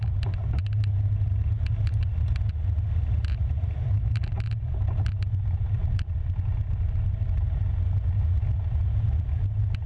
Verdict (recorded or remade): recorded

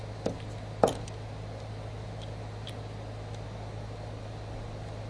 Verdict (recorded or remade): recorded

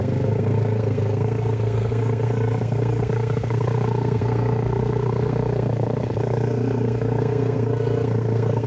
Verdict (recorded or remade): remade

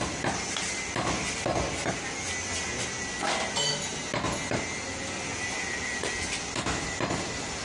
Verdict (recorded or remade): recorded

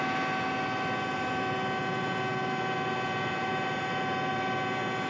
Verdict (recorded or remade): recorded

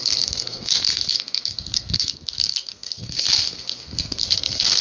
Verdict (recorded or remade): remade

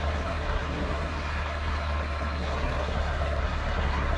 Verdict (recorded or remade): remade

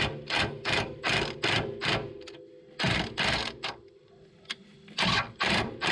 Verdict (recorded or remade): recorded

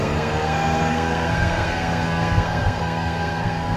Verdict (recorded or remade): remade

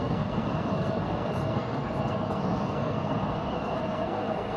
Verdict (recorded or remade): remade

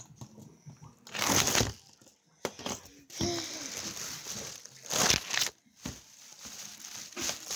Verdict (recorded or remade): recorded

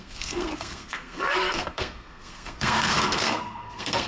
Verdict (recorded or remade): remade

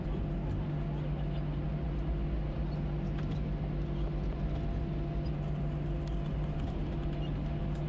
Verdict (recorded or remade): recorded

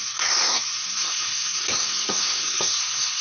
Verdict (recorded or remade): remade